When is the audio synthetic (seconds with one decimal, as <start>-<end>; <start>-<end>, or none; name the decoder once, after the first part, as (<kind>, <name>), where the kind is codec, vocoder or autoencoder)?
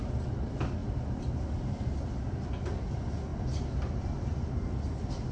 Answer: none